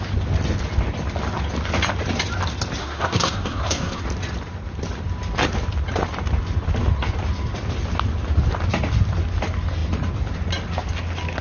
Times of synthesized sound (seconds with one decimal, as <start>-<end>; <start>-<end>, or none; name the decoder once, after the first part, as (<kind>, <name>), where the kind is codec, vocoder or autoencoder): 2.8-4.0 (codec, SNAC)